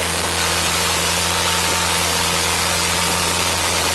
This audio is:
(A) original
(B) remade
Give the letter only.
A